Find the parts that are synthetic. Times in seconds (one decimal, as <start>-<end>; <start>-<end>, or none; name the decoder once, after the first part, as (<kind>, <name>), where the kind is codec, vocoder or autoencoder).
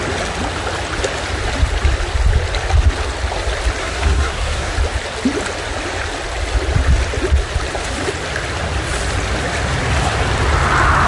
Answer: 3.8-4.7 (codec, SNAC)